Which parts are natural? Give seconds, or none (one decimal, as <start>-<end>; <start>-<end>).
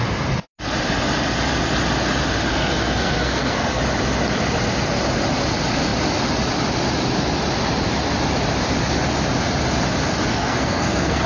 0.0-2.5; 3.8-10.3